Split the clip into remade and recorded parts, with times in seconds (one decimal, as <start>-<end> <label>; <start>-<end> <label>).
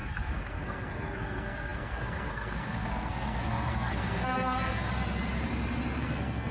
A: 0.0-4.9 remade; 4.9-6.0 recorded; 6.0-6.5 remade